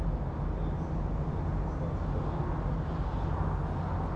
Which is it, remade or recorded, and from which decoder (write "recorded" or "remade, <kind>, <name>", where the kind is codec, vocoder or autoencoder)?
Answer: recorded